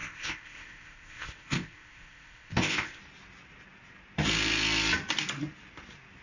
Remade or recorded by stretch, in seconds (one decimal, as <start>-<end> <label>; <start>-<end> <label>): 0.0-3.0 remade; 3.0-6.2 recorded